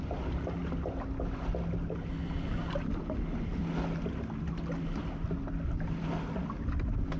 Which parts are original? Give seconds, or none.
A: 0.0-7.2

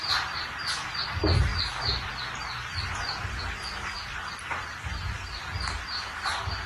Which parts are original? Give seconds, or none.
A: 0.0-6.7

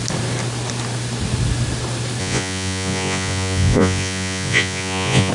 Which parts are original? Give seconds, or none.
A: 0.0-2.2

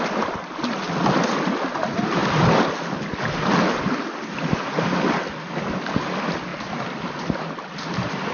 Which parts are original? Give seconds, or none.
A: 0.0-8.3